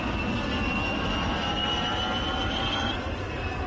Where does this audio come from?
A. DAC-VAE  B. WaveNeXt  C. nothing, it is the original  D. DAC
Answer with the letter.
C